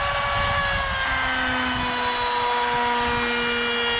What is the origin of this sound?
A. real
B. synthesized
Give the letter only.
A